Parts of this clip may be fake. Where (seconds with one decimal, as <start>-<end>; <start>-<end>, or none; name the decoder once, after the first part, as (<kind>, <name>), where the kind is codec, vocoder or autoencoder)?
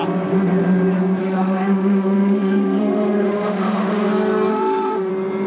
1.2-4.1 (autoencoder, DAC-VAE); 4.5-5.1